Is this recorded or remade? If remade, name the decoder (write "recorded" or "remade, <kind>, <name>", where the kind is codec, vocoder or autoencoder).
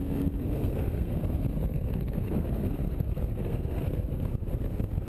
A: remade, codec, SNAC